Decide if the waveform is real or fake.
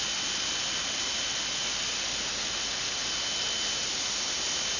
real